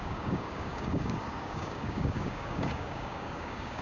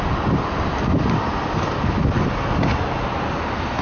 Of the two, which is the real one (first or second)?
second